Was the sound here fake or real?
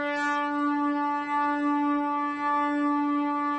real